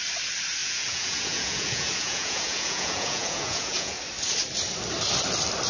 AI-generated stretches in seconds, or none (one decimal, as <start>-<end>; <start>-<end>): 0.6-4.0

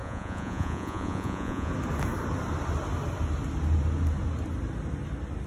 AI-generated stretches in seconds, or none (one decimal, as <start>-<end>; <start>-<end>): 0.0-1.7

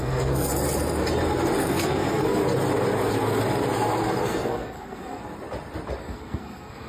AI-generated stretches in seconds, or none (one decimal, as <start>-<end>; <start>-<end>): 0.0-0.5; 1.6-2.4; 4.2-5.2; 6.0-6.9

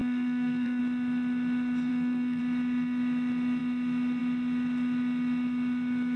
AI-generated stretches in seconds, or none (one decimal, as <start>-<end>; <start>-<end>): 0.0-0.8; 1.9-2.4

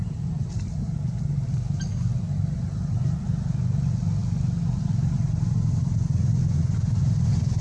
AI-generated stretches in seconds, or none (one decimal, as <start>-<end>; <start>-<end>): none

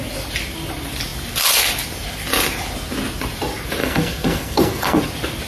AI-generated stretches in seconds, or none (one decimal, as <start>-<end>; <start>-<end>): 3.8-5.0

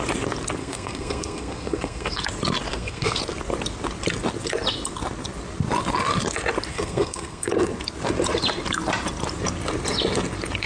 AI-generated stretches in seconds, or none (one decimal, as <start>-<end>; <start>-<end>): 0.6-2.2; 2.7-3.2; 6.7-7.5

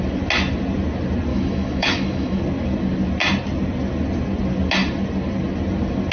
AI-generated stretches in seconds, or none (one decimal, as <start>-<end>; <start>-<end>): 1.3-2.4